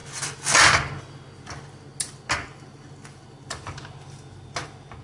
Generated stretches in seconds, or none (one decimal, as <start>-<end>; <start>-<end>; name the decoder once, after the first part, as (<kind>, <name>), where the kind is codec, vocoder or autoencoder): none